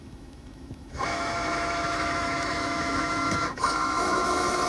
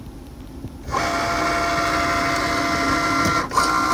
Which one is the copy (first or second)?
first